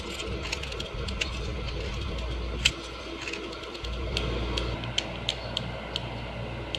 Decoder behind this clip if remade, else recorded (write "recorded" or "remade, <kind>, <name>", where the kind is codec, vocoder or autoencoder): recorded